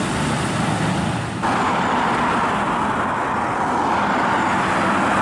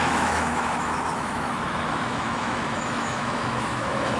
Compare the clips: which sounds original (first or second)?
first